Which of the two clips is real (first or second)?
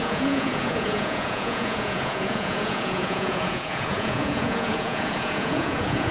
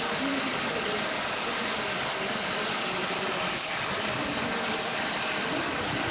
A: second